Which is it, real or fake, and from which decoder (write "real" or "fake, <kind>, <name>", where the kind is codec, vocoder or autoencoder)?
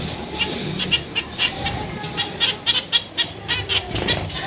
real